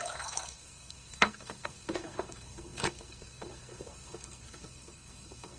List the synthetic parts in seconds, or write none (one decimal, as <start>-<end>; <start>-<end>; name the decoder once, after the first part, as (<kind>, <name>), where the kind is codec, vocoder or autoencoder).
0.0-5.6 (codec, SNAC)